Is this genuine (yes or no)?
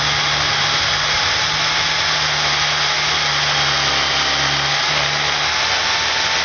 yes